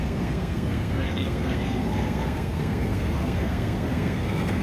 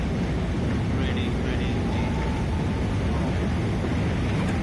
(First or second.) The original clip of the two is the second